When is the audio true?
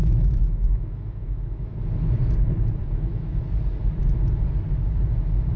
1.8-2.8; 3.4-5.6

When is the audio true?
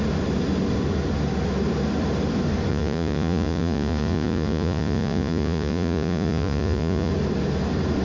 0.0-2.7; 7.1-8.0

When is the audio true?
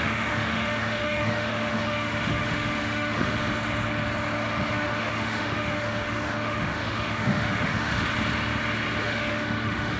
3.4-4.7; 8.1-9.0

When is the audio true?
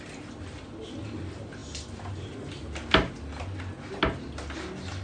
0.0-5.0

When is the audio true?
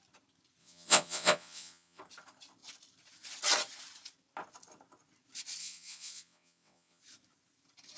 0.0-0.6; 2.0-5.6; 7.0-8.0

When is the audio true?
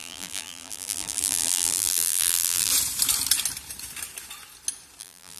2.7-5.0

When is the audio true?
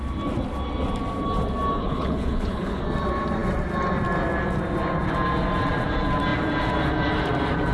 0.0-1.8; 2.8-7.7